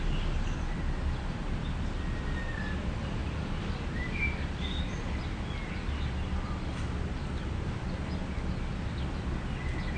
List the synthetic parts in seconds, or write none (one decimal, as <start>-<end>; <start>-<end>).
none